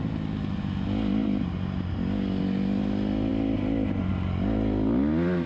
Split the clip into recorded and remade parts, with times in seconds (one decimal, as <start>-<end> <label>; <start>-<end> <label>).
0.0-1.2 recorded; 1.2-1.9 remade; 1.9-5.5 recorded